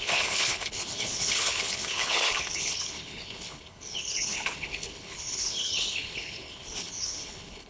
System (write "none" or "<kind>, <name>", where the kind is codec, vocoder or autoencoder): codec, HILCodec